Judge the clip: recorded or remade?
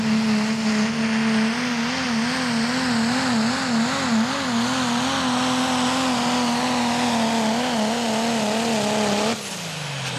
recorded